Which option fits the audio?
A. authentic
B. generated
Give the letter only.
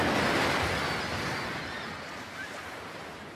A